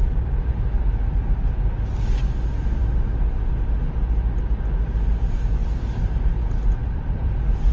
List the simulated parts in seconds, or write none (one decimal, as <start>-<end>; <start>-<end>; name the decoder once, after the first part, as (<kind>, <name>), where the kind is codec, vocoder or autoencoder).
6.8-7.7 (vocoder, BigVGAN v2)